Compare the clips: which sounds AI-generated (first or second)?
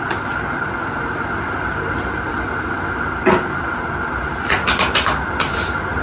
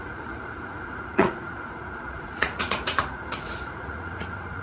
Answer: second